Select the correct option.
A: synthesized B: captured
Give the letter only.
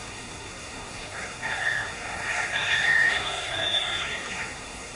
A